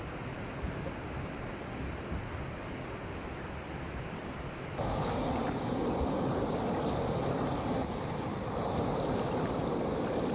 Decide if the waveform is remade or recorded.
recorded